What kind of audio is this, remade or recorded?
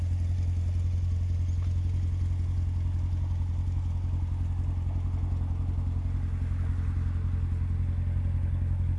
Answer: recorded